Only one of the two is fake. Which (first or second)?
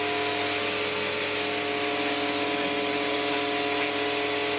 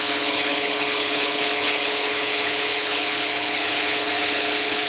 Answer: second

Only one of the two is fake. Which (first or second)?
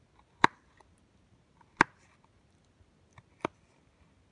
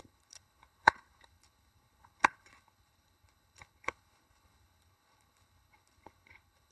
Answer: second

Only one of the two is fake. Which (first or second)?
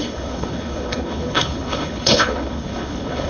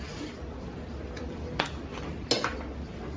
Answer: first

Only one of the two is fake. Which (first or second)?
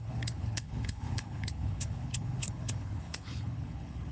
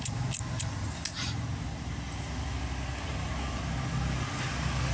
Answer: first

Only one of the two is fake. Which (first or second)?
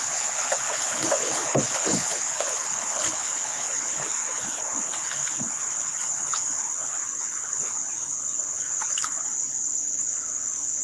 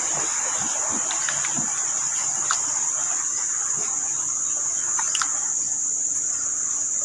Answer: first